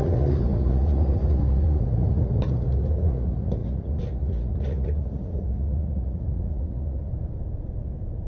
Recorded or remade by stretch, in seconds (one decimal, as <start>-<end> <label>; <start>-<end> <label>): 0.0-7.1 remade; 7.1-8.3 recorded